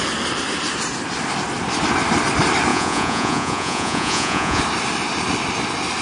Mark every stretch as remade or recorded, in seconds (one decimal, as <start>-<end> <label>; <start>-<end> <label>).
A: 0.0-2.7 recorded; 2.7-4.6 remade; 4.6-6.0 recorded